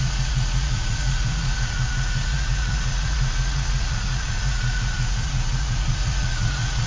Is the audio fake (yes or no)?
yes